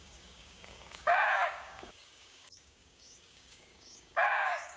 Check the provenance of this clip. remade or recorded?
remade